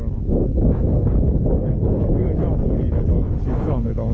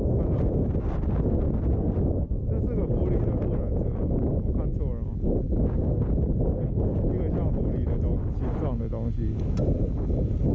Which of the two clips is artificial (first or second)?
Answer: first